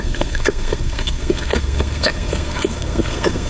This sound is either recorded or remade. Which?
remade